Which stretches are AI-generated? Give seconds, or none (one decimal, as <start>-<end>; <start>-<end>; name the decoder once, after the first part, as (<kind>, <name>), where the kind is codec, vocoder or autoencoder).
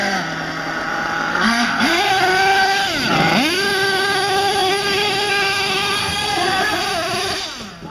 1.3-2.1 (codec, SNAC); 6.0-6.8